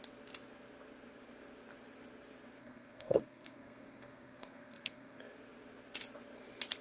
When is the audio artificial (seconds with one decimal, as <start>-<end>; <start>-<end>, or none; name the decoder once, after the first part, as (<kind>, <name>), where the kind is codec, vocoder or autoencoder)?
2.6-5.2 (codec, SNAC)